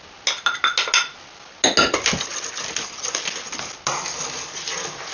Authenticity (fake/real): real